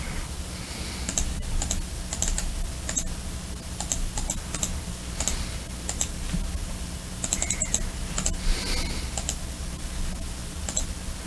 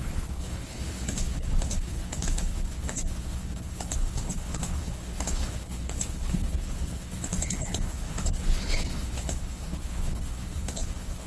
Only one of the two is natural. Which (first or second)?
first